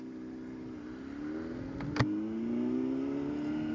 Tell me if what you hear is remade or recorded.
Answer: recorded